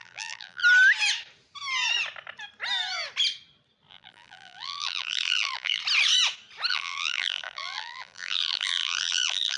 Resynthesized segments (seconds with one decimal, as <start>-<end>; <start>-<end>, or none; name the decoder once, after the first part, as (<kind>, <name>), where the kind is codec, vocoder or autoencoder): 0.0-0.6 (vocoder, BigVGAN v2); 3.9-5.8; 6.7-9.6